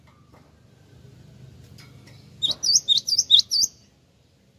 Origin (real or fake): real